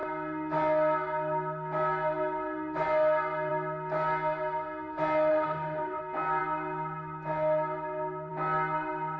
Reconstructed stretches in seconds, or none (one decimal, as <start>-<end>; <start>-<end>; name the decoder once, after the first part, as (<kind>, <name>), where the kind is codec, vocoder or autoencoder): 5.3-6.0 (autoencoder, DAC-VAE)